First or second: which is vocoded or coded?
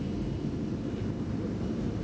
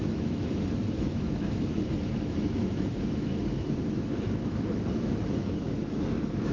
second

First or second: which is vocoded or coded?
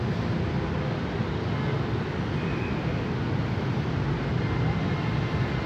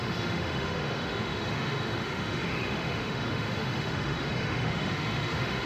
second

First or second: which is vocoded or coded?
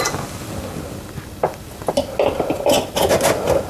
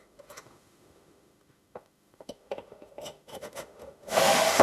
second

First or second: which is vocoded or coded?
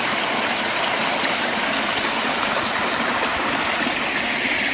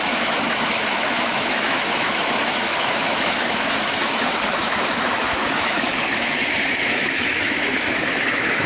second